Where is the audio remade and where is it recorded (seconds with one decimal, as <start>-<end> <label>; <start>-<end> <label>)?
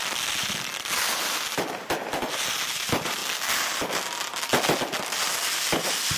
0.0-6.2 recorded